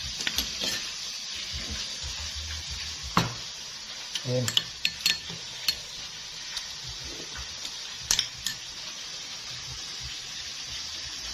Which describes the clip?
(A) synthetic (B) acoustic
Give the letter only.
B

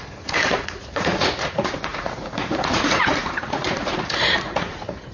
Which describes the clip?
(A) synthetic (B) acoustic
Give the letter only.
A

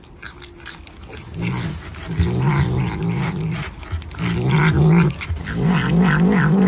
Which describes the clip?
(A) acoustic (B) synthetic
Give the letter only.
A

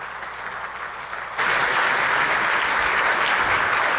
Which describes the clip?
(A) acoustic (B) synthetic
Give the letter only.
A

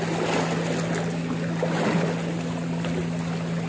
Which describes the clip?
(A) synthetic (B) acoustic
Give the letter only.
B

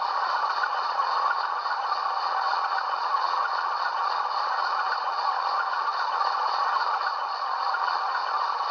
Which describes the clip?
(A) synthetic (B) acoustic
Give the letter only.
A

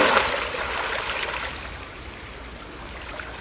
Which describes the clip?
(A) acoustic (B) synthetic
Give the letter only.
A